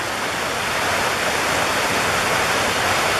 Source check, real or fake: real